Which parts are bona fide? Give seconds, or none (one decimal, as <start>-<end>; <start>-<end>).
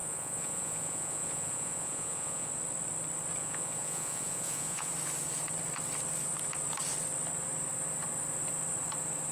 2.5-3.4; 4.9-9.3